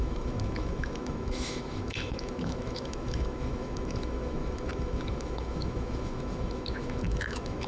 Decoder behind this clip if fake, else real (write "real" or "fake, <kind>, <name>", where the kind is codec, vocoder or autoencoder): fake, autoencoder, DAC-VAE